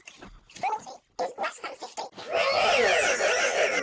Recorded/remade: recorded